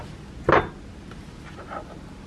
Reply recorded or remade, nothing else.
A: recorded